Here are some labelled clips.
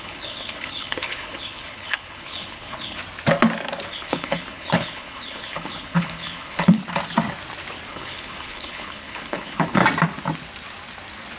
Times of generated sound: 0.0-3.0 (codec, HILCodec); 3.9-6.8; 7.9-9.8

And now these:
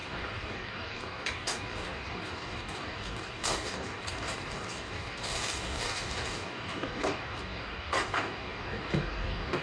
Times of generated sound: 0.0-9.6 (codec, DAC)